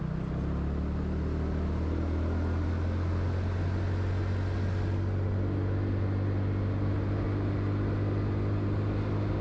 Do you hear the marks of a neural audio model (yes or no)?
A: no